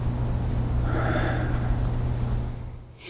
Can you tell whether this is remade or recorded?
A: recorded